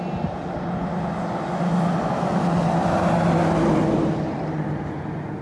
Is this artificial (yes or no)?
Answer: no